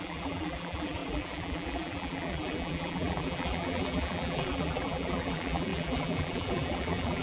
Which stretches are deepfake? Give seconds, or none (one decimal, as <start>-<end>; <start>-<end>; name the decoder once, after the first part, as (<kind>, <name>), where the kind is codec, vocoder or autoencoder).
0.0-7.2 (vocoder, BigVGAN v2)